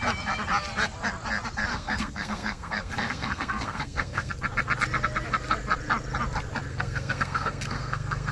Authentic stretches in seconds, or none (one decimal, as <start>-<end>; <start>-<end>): 0.0-1.7; 4.3-6.7